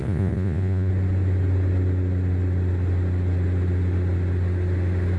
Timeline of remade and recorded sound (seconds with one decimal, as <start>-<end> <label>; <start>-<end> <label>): 0.0-0.9 remade; 0.9-5.2 recorded